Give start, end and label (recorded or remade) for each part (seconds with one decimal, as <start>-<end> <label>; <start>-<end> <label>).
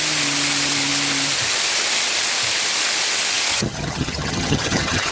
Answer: 0.0-3.5 recorded; 3.5-5.1 remade